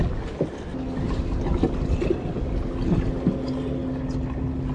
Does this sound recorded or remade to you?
recorded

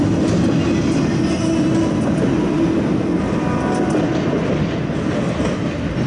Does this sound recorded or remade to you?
recorded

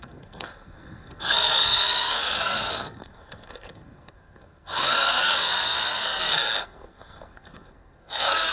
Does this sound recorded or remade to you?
remade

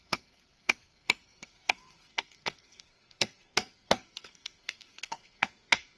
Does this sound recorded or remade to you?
remade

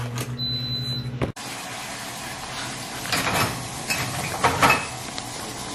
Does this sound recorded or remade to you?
recorded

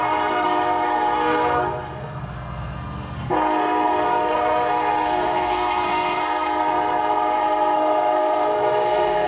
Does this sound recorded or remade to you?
remade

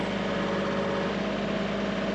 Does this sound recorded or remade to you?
recorded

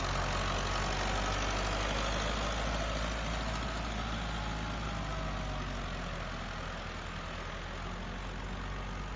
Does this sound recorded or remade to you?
recorded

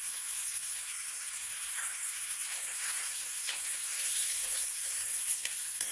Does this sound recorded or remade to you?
remade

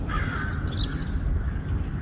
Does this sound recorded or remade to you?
recorded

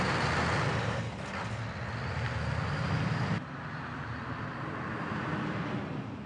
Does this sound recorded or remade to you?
recorded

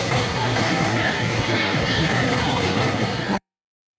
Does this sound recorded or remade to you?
remade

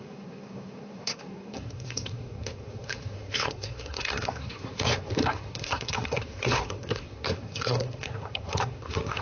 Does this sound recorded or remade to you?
remade